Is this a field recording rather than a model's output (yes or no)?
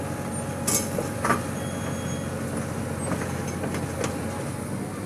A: yes